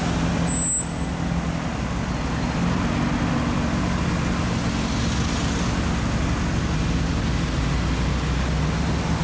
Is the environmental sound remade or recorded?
recorded